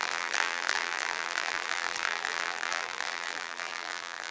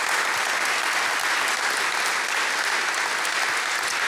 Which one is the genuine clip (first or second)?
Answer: second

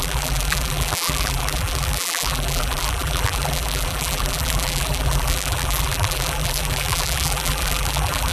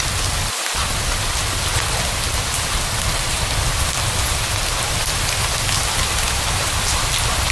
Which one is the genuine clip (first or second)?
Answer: second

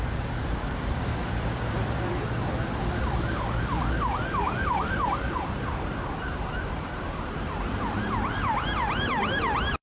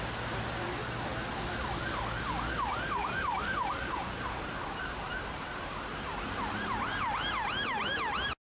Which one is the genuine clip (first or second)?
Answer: second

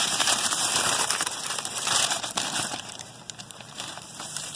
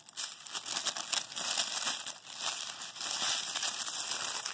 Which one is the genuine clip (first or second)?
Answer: second